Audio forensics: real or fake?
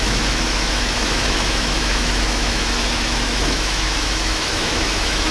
fake